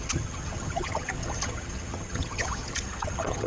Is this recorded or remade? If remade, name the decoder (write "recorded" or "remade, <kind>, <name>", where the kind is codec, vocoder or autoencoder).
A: remade, vocoder, HiFi-GAN